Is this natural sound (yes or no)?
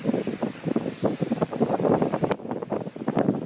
yes